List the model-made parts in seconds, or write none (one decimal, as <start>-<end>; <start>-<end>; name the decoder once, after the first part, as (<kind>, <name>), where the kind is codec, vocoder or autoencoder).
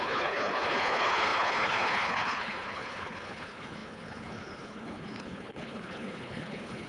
0.0-6.9 (codec, HILCodec)